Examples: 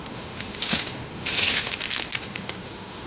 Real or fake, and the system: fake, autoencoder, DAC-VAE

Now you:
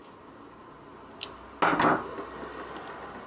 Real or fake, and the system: real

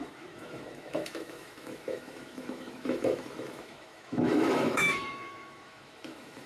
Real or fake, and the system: fake, autoencoder, DAC-VAE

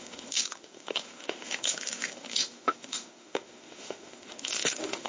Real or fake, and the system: fake, autoencoder, DAC-VAE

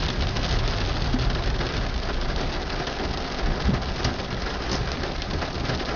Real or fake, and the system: real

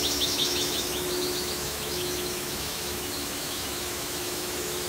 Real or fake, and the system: fake, autoencoder, DAC-VAE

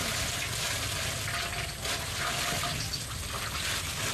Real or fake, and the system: real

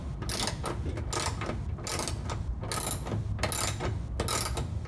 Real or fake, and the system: real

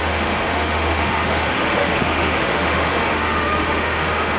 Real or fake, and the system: fake, autoencoder, DAC-VAE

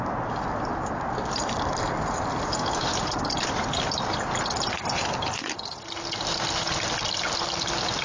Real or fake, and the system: real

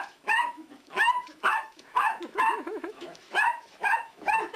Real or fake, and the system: fake, autoencoder, DAC-VAE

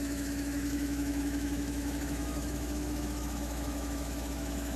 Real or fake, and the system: fake, autoencoder, DAC-VAE